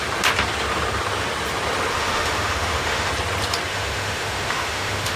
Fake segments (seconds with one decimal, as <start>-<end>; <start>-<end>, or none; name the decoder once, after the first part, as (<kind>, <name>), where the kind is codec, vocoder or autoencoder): 1.9-3.1 (autoencoder, DAC-VAE); 3.7-5.2